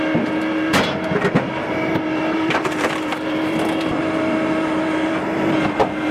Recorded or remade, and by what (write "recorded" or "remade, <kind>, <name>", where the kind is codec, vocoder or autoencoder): remade, vocoder, BigVGAN v2